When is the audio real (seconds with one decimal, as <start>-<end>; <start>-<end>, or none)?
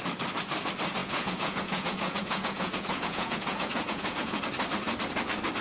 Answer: 0.0-1.0; 4.4-5.6